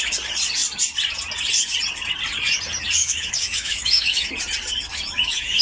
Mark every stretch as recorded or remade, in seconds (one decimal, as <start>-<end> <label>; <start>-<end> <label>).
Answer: 0.0-3.0 recorded; 3.0-4.3 remade; 4.3-4.9 recorded; 4.9-5.6 remade

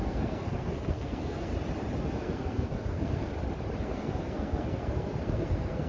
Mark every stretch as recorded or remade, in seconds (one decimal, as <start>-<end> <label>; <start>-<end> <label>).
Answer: 0.0-1.5 remade; 1.5-2.0 recorded; 2.0-3.3 remade; 3.3-3.8 recorded; 3.8-5.9 remade

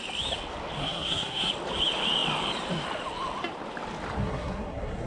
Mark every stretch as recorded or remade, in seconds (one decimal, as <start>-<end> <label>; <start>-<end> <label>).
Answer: 0.0-0.8 recorded; 0.8-1.5 remade; 1.5-4.2 recorded; 4.2-5.1 remade

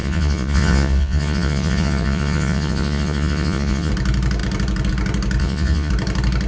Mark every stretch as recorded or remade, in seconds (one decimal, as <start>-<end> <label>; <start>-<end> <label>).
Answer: 0.0-3.9 remade; 3.9-5.4 recorded; 5.4-5.9 remade; 5.9-6.5 recorded

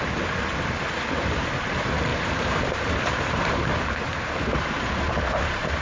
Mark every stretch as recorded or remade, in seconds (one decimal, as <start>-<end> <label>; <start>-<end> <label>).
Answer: 0.0-2.1 recorded; 2.1-5.8 remade

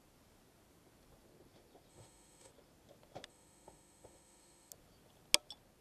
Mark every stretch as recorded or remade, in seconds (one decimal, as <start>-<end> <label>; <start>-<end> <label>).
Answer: 0.0-1.9 recorded; 1.9-2.5 remade; 2.5-3.3 recorded; 3.3-4.7 remade; 4.7-5.8 recorded

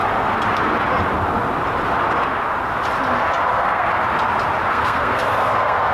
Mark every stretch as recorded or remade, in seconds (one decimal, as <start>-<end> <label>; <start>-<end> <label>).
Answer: 0.0-3.5 recorded; 3.5-3.9 remade; 3.9-4.7 recorded; 4.7-5.9 remade

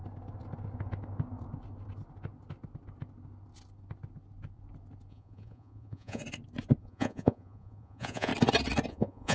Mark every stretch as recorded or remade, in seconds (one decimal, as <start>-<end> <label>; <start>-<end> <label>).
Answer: 0.0-5.1 recorded; 5.1-6.2 remade; 6.2-6.8 recorded; 6.8-8.3 remade; 8.3-8.9 recorded; 8.9-9.3 remade